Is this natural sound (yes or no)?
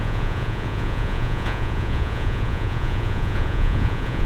no